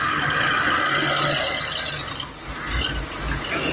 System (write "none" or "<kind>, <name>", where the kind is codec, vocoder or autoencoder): none